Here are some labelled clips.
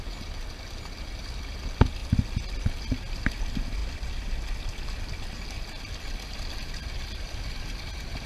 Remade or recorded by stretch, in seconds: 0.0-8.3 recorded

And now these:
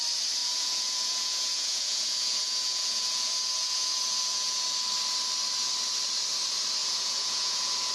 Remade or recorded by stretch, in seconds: 0.0-0.4 recorded; 0.4-4.6 remade; 4.6-6.8 recorded; 6.8-7.9 remade

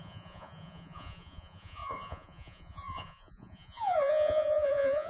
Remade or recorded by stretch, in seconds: 0.0-5.1 remade

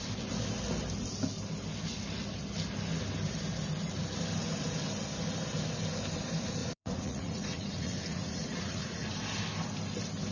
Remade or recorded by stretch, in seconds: 0.0-6.6 recorded; 6.6-9.1 remade; 9.1-10.3 recorded

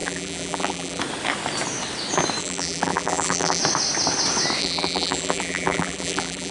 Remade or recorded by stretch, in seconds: 0.0-1.0 remade; 1.0-2.4 recorded; 2.4-3.6 remade; 3.6-4.6 recorded; 4.6-6.5 remade

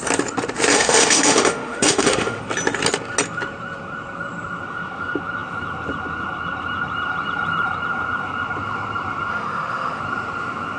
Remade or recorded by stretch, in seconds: 0.0-0.7 recorded; 0.7-2.4 remade; 2.4-9.3 recorded; 9.3-10.0 remade; 10.0-10.8 recorded

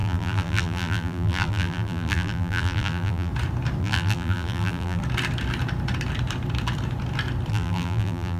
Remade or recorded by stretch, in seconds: 0.0-3.3 remade; 3.3-3.8 recorded; 3.8-5.0 remade; 5.0-7.5 recorded; 7.5-8.4 remade

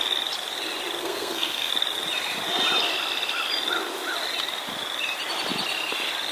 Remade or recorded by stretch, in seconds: 0.0-1.0 recorded; 1.0-1.7 remade; 1.7-6.3 recorded